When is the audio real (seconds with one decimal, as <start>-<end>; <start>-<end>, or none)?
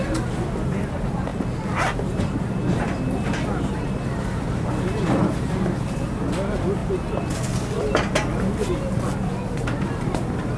0.0-10.6